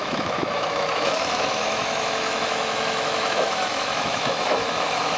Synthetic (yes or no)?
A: yes